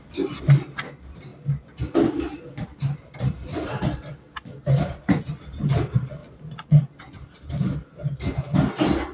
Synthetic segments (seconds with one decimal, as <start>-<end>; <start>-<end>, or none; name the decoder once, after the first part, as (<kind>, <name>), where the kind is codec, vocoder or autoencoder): 6.2-6.8 (vocoder, Vocos)